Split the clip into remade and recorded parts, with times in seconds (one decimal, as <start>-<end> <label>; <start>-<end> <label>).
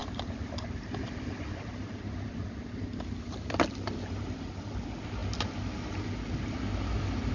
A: 0.0-3.4 remade; 3.4-7.3 recorded